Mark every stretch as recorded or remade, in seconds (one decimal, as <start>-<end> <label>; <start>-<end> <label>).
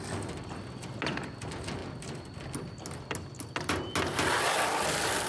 0.0-5.3 recorded